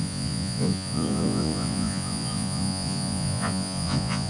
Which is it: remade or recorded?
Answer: remade